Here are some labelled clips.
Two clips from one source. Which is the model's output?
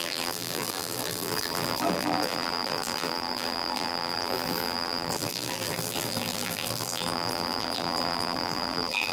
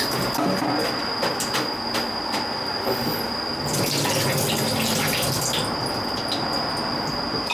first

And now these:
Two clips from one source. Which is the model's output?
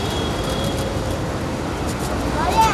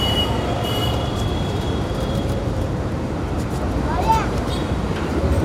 second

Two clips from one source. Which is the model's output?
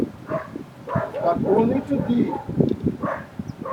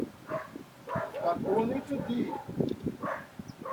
first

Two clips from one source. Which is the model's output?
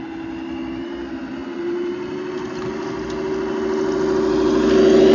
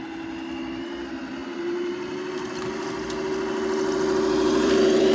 second